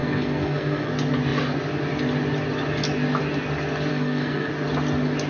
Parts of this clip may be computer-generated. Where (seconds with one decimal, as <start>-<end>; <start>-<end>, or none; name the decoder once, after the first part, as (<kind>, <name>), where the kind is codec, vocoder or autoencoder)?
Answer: 0.0-0.9 (codec, SNAC); 3.9-4.5